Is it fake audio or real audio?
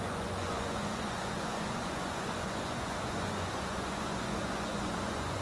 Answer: fake